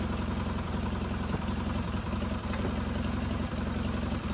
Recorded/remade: recorded